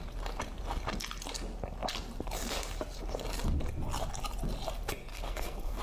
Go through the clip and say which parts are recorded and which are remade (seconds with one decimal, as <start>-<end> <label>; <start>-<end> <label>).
0.0-5.1 recorded; 5.1-5.8 remade